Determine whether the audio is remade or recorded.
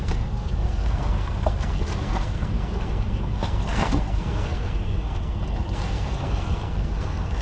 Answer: remade